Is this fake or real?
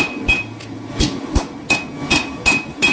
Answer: real